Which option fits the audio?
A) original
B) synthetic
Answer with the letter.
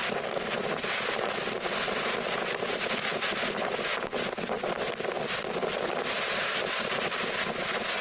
A